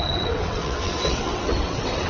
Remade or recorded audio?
remade